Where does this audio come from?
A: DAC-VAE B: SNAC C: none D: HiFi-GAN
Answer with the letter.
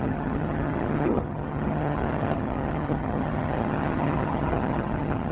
D